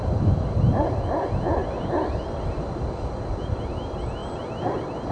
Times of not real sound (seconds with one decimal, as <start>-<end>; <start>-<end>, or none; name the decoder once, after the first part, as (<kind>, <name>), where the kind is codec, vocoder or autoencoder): none